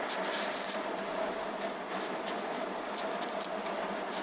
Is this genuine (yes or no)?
yes